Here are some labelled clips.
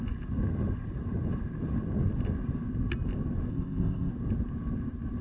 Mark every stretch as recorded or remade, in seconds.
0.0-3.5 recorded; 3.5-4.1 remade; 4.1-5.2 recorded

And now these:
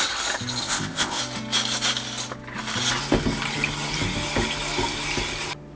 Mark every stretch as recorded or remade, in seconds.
0.0-0.6 recorded; 0.6-1.2 remade; 1.2-5.8 recorded